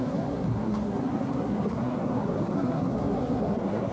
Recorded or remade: remade